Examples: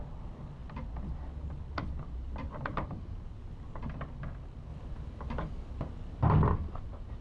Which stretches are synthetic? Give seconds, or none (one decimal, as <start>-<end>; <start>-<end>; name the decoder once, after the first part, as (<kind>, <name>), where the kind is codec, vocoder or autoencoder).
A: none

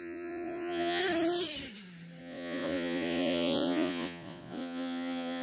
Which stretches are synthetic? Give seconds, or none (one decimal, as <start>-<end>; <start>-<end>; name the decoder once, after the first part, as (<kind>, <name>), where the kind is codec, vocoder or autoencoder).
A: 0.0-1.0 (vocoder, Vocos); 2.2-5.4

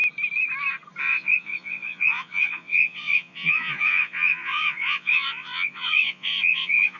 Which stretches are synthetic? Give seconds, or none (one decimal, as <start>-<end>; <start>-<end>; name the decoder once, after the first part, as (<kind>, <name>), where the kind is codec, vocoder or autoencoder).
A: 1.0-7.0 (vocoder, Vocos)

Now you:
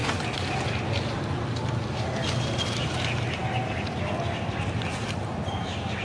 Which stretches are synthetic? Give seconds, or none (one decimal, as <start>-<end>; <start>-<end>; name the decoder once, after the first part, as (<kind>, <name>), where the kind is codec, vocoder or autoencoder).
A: none